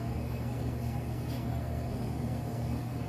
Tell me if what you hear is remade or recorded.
remade